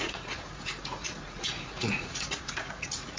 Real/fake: fake